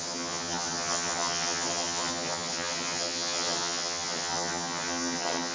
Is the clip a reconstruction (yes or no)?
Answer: yes